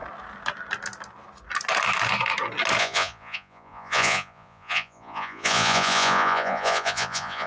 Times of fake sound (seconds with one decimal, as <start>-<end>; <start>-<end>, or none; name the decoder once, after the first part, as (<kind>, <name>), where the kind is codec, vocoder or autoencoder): 2.8-7.5 (vocoder, Vocos)